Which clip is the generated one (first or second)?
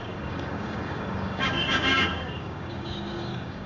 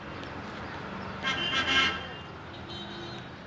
first